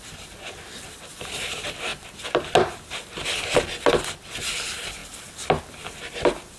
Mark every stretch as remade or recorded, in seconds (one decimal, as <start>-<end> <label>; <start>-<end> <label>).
0.0-6.6 recorded